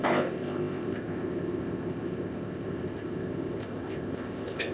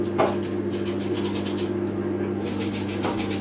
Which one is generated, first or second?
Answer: first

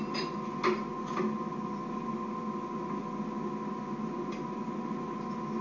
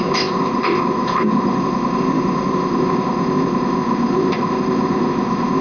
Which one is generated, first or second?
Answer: second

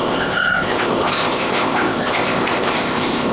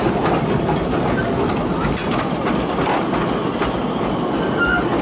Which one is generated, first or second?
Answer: first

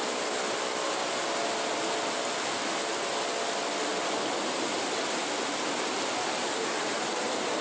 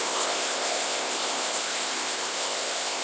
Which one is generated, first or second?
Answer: second